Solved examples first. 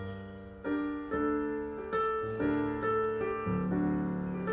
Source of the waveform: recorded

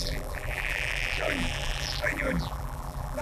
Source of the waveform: remade